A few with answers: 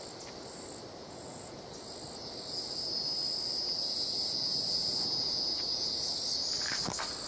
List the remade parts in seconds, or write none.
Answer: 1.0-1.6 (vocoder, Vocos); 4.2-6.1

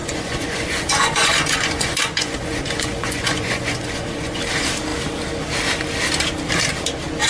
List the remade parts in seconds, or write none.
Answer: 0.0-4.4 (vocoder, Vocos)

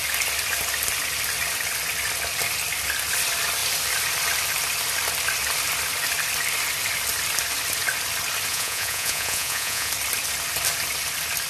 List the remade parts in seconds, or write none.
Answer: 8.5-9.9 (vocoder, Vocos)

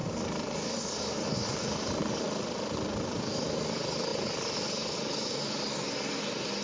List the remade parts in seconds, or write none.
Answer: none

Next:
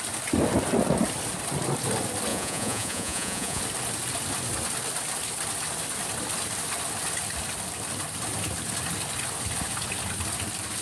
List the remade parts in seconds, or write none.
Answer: 2.3-3.6 (vocoder, Vocos)

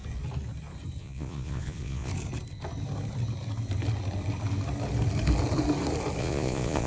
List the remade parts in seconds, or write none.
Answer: 1.0-2.1 (vocoder, Vocos); 6.2-6.9

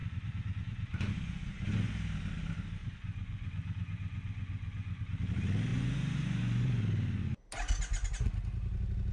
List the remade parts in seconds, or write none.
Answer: 0.0-1.9 (vocoder, Vocos); 2.8-5.0; 5.7-6.8

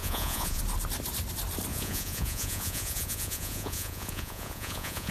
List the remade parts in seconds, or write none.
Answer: 0.0-0.6 (vocoder, Vocos); 1.7-5.1